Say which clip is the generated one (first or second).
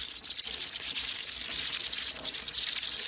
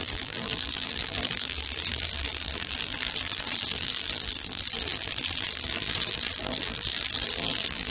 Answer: second